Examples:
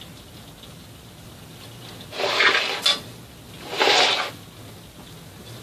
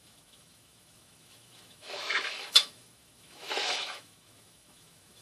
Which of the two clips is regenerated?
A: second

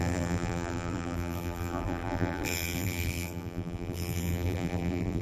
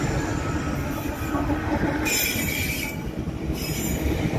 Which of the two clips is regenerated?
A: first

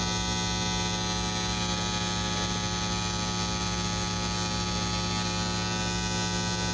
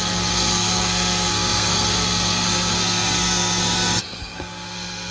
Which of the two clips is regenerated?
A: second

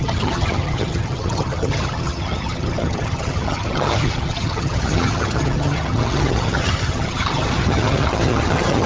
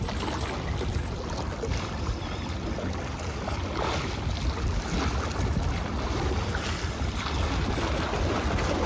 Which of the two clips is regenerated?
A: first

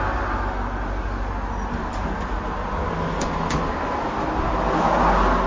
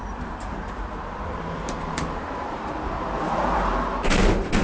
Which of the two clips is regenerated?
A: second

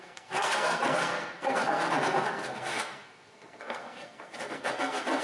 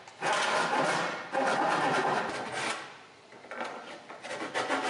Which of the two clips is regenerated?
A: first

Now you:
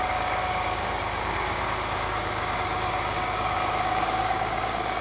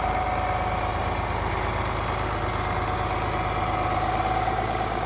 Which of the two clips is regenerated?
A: first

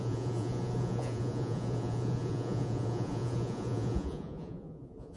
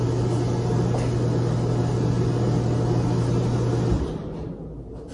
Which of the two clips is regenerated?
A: first